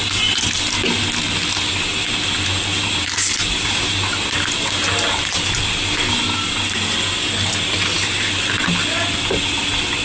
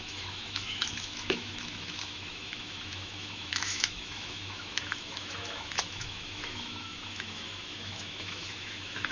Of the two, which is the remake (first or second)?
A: second